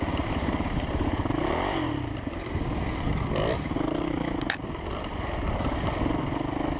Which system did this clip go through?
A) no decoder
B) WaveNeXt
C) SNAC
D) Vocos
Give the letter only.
A